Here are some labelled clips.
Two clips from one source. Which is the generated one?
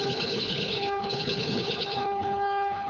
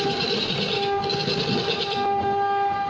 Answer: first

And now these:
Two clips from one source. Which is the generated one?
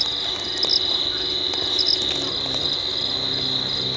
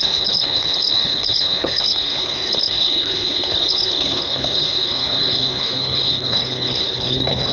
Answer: second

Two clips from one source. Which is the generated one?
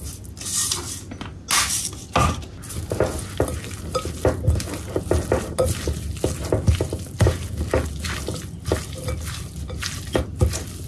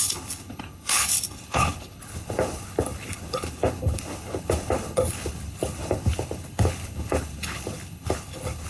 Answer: second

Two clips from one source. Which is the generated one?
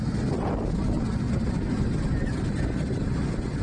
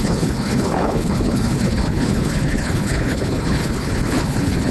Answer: second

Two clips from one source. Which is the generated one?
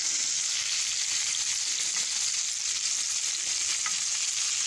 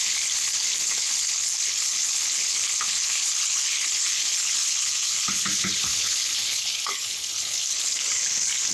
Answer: second